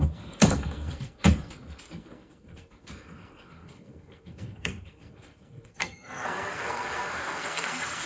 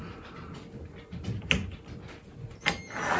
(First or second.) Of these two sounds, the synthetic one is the first